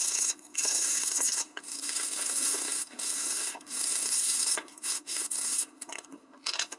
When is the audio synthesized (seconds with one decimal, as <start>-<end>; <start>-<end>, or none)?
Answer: 0.0-6.8